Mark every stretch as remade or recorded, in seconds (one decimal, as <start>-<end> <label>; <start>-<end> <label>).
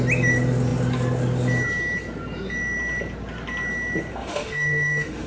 0.0-4.1 recorded; 4.1-5.3 remade